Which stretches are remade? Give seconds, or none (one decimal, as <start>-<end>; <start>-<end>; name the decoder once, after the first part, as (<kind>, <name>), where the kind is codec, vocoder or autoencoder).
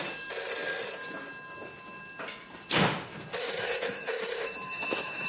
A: 3.4-5.3 (autoencoder, DAC-VAE)